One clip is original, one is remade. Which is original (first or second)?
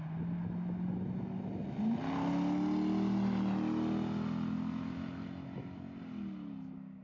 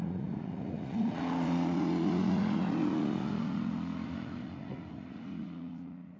first